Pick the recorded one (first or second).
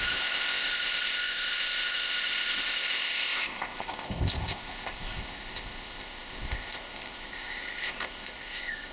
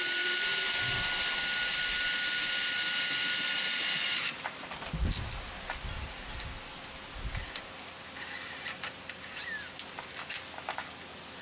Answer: second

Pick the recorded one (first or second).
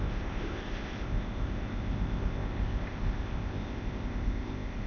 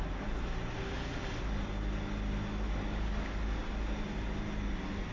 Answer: second